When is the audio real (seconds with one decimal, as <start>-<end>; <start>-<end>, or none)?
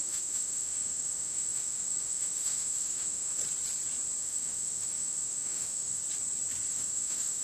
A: 3.4-4.2; 6.0-6.7